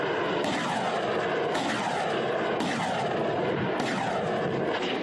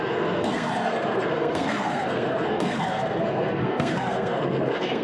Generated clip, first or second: second